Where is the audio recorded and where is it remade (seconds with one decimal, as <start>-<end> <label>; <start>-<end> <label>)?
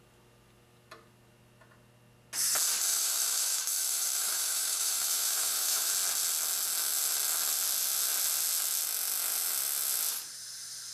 0.0-2.9 recorded; 2.9-5.9 remade; 5.9-10.9 recorded